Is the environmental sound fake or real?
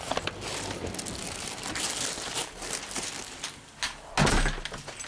real